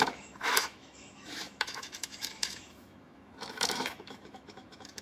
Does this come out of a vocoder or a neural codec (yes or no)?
yes